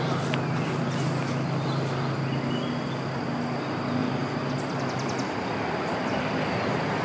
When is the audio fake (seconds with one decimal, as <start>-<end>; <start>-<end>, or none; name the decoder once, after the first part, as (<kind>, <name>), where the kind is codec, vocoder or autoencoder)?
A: none